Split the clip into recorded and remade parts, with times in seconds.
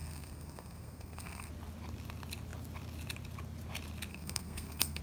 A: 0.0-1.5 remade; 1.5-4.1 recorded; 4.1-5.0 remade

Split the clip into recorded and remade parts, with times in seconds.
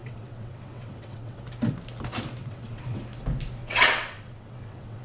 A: 0.0-1.4 remade; 1.4-2.4 recorded; 2.4-3.0 remade; 3.0-3.6 recorded; 3.6-5.0 remade